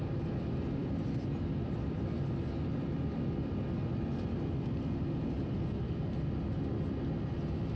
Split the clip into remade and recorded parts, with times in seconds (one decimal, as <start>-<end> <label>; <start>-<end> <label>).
0.0-0.8 recorded; 0.8-2.0 remade; 2.0-7.8 recorded